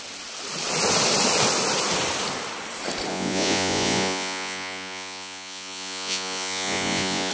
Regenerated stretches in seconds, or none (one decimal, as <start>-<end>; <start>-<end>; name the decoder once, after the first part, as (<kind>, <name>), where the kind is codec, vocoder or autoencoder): 3.1-7.3 (vocoder, Vocos)